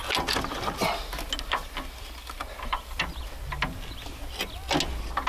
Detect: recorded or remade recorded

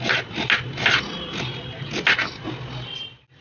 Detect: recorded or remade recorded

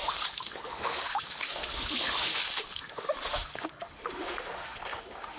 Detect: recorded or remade remade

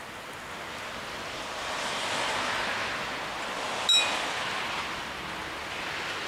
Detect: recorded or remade recorded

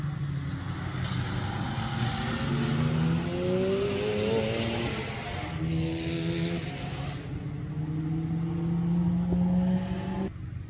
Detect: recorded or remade recorded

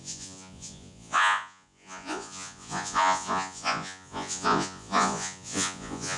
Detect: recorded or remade remade